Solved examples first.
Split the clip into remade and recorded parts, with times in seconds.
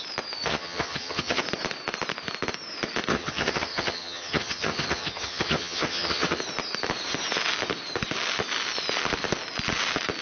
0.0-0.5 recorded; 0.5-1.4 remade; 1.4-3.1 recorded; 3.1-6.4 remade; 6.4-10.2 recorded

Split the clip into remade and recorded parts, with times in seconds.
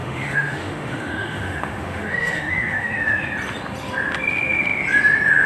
0.0-3.3 remade; 3.3-5.5 recorded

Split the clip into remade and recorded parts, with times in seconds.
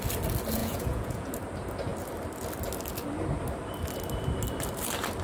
0.0-0.6 recorded; 0.6-1.3 remade; 1.3-5.2 recorded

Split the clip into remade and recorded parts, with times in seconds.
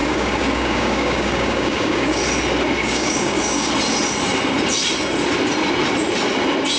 0.0-2.2 remade; 2.2-2.8 recorded; 2.8-3.7 remade; 3.7-6.8 recorded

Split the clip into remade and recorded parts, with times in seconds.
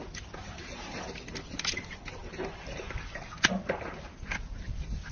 0.0-5.1 recorded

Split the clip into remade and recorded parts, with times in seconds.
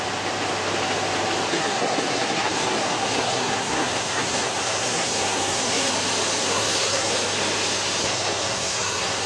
0.0-1.5 recorded; 1.5-5.9 remade; 5.9-6.4 recorded; 6.4-7.1 remade; 7.1-8.0 recorded; 8.0-9.3 remade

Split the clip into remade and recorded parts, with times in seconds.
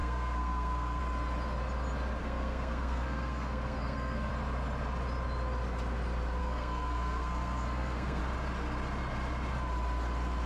0.0-1.0 remade; 1.0-2.2 recorded; 2.2-4.3 remade; 4.3-6.4 recorded; 6.4-8.2 remade; 8.2-10.5 recorded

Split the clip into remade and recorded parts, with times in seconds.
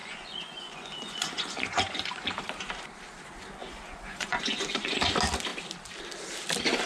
0.0-2.4 remade; 2.4-3.6 recorded; 3.6-5.1 remade; 5.1-6.9 recorded